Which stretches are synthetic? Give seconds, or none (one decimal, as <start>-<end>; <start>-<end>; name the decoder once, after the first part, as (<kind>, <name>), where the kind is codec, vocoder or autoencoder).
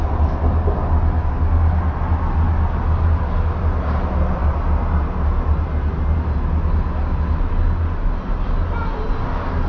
none